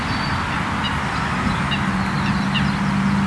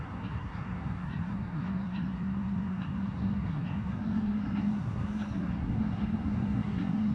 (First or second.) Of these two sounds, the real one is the first